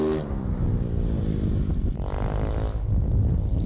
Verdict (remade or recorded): recorded